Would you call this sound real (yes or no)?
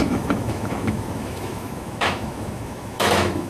no